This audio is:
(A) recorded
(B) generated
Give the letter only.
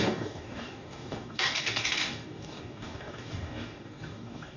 B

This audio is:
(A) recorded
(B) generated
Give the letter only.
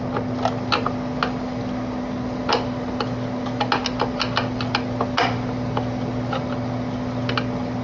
A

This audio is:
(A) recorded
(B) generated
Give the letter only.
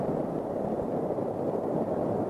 A